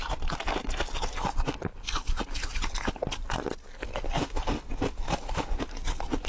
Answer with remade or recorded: recorded